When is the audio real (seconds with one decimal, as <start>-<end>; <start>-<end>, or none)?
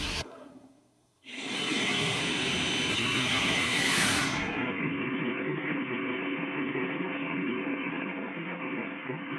2.2-2.9